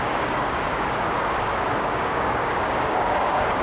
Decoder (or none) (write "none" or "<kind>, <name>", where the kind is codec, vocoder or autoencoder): codec, DAC